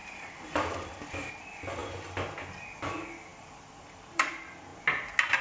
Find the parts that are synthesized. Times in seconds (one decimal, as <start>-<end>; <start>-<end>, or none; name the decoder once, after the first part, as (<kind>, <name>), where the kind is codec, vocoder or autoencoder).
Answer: 0.0-1.3 (vocoder, BigVGAN v2); 3.3-4.3